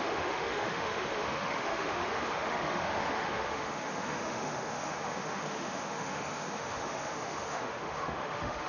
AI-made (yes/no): yes